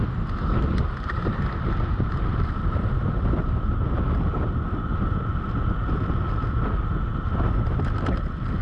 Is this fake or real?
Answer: real